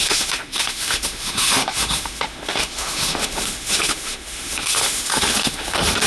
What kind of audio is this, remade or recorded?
remade